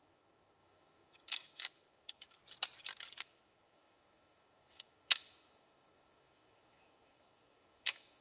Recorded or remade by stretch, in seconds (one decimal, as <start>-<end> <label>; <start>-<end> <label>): 0.0-2.4 remade; 2.4-3.2 recorded; 3.2-8.2 remade